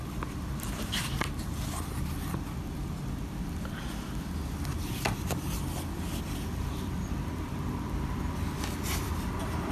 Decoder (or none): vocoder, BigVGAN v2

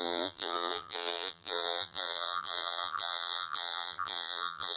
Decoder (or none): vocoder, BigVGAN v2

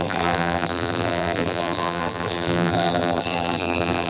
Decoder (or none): vocoder, BigVGAN v2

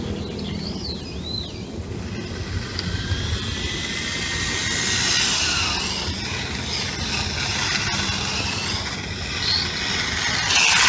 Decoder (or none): none